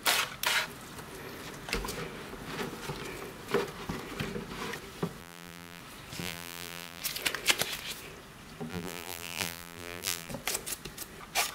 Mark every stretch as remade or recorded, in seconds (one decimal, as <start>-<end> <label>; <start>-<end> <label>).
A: 0.0-5.2 recorded; 5.2-5.8 remade; 5.8-6.2 recorded; 6.2-7.0 remade; 7.0-8.7 recorded; 8.7-10.3 remade; 10.3-11.5 recorded